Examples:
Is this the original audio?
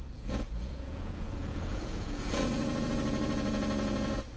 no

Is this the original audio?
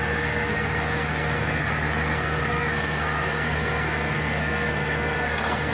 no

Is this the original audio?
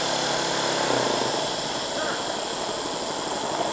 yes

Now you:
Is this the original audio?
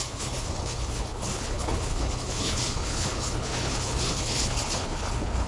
no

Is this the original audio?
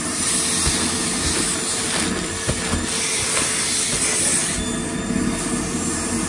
yes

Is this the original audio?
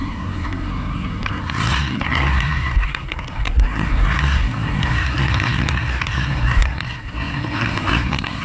no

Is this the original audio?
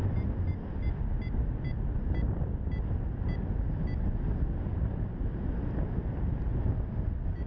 yes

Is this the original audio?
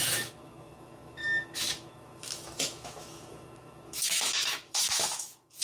no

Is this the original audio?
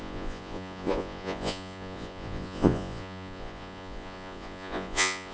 no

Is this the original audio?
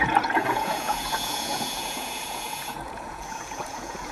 no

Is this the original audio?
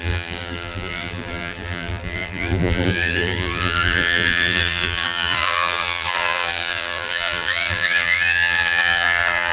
no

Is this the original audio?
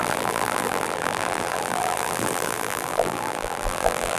no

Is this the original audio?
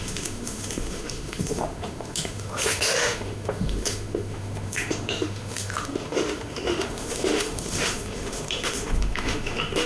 no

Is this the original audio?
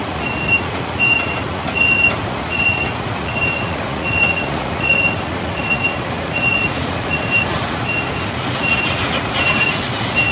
no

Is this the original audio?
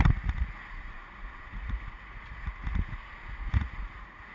no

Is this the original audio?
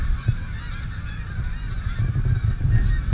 yes